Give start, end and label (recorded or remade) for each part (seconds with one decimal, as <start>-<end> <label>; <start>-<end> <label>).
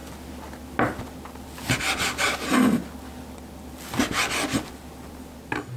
0.0-4.0 recorded; 4.0-4.7 remade; 4.7-5.8 recorded